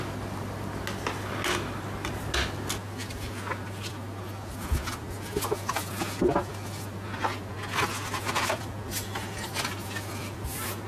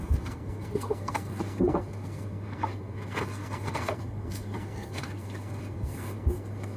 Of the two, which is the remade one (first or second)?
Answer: second